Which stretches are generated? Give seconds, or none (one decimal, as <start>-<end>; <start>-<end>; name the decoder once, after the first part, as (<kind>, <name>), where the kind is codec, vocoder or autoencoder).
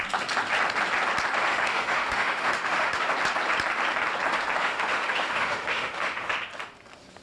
1.5-3.1 (autoencoder, DAC-VAE); 4.6-6.3